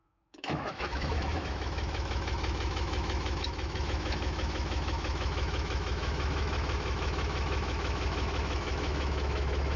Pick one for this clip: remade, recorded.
remade